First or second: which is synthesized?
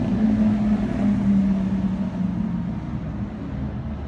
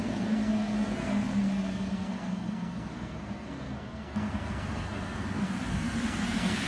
second